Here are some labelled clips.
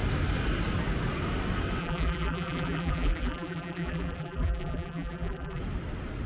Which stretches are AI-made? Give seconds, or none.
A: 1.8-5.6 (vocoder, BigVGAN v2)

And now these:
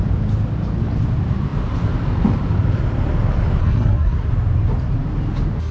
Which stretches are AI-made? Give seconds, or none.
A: 3.6-4.3 (codec, SNAC)